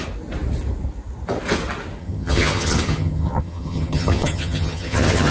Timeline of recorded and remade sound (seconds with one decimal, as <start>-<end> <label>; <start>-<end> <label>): 0.0-2.0 recorded; 2.0-5.3 remade